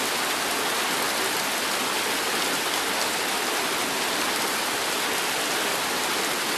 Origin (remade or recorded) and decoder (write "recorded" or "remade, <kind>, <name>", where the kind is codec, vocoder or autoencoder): recorded